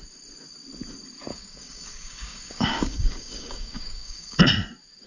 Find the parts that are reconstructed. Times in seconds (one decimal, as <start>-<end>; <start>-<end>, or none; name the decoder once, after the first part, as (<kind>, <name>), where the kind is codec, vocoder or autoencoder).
1.3-4.4 (codec, DAC)